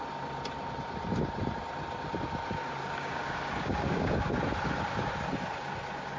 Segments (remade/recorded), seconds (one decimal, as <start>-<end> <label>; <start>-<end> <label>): 0.0-2.8 recorded; 2.8-4.3 remade; 4.3-6.2 recorded